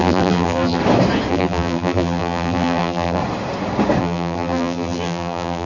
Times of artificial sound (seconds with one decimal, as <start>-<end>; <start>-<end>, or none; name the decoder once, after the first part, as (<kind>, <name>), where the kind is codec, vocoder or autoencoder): 0.0-0.8 (vocoder, BigVGAN v2); 1.3-3.2; 4.0-5.6

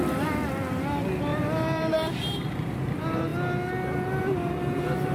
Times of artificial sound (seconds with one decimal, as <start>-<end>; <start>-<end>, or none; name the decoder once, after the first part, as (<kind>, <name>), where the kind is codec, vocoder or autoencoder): 1.3-2.7 (vocoder, BigVGAN v2)

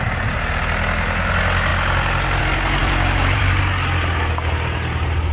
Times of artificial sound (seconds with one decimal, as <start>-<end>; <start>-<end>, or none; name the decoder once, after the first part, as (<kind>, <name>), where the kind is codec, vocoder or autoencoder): 2.8-3.6 (vocoder, BigVGAN v2)

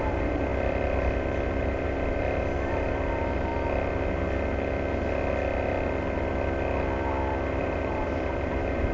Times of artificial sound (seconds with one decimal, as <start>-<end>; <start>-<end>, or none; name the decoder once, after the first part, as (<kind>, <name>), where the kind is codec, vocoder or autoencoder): 0.0-0.5 (vocoder, BigVGAN v2); 1.6-3.5; 7.6-8.9